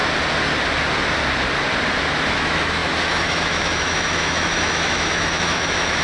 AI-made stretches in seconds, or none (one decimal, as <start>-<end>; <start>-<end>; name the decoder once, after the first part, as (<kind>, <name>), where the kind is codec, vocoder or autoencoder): 2.3-6.0 (autoencoder, DAC-VAE)